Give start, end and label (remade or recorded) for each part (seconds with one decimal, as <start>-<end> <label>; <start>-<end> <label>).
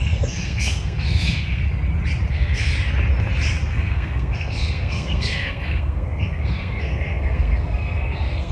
0.0-1.6 remade; 1.6-2.3 recorded; 2.3-2.7 remade; 2.7-3.7 recorded; 3.7-8.5 remade